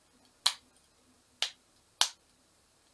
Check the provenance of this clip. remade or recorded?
recorded